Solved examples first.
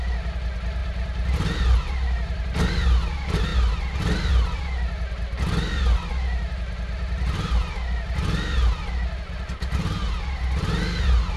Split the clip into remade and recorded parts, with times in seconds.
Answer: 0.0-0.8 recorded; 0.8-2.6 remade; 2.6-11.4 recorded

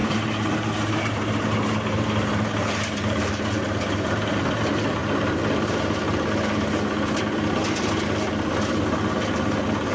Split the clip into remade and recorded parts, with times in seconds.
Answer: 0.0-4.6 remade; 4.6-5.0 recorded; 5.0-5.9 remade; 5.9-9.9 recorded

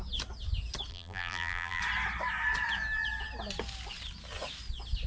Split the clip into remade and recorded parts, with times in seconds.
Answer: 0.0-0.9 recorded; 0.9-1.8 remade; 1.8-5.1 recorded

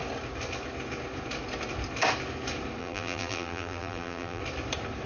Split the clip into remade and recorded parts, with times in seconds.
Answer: 0.0-2.8 recorded; 2.8-4.4 remade; 4.4-5.1 recorded